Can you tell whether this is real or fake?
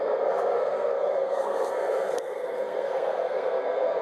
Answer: fake